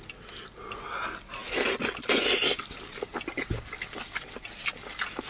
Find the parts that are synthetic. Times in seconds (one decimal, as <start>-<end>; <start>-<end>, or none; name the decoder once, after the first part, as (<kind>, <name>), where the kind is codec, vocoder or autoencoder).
none